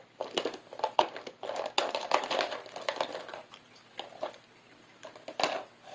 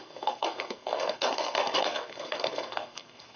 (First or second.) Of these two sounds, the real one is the first